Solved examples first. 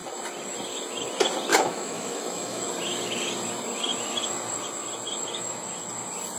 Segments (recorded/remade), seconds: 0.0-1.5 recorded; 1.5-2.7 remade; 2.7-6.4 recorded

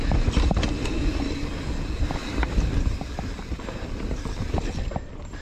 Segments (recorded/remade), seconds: 0.0-2.2 recorded; 2.2-3.3 remade; 3.3-5.4 recorded

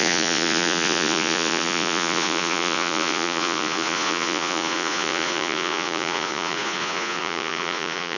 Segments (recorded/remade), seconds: 0.0-8.2 remade

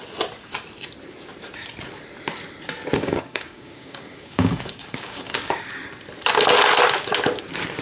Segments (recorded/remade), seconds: 0.0-2.9 recorded; 2.9-5.5 remade; 5.5-7.8 recorded

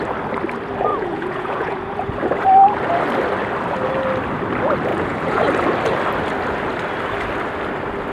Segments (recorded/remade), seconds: 0.0-0.9 recorded; 0.9-2.1 remade; 2.1-4.9 recorded; 4.9-5.4 remade; 5.4-8.1 recorded